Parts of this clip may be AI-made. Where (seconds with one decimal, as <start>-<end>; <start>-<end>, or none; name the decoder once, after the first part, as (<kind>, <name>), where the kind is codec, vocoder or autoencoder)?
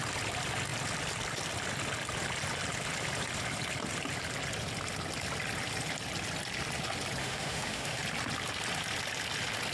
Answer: 7.2-8.0 (autoencoder, DAC-VAE)